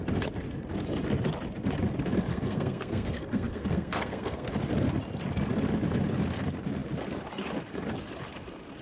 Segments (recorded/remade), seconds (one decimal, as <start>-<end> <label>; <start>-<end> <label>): 0.0-2.3 recorded; 2.3-4.5 remade; 4.5-8.8 recorded